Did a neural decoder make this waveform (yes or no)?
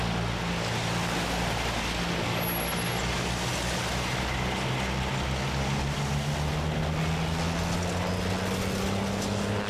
no